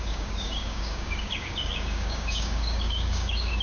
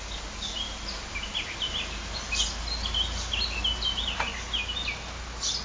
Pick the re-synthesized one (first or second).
first